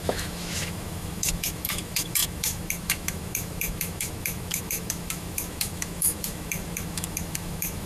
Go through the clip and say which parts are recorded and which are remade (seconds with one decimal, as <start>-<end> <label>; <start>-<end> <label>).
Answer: 0.0-7.9 remade